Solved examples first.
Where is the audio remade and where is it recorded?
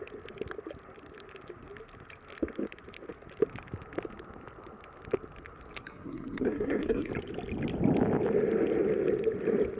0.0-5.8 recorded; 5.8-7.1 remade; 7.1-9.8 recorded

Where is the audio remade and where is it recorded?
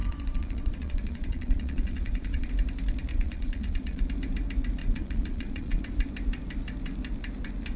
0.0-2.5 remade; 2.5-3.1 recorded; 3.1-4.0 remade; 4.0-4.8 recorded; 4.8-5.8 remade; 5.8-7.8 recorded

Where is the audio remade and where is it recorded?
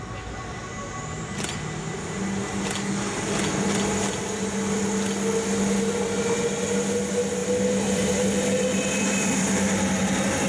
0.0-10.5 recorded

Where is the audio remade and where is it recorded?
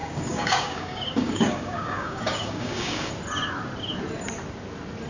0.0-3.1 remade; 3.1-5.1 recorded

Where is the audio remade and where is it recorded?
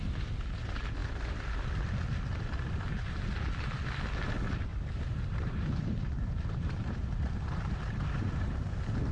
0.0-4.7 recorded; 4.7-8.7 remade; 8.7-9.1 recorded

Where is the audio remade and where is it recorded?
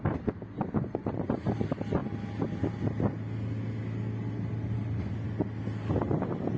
0.0-6.6 recorded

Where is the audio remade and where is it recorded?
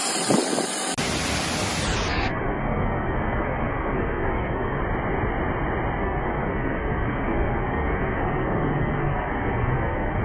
0.0-2.1 recorded; 2.1-4.8 remade; 4.8-6.0 recorded; 6.0-10.2 remade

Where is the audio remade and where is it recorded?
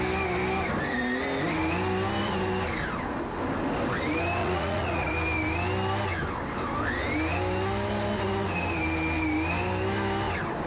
0.0-4.4 recorded; 4.4-5.1 remade; 5.1-10.7 recorded